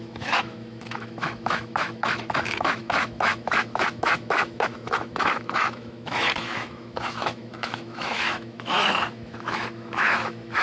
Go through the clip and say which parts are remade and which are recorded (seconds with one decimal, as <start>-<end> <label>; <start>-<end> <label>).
0.0-10.6 remade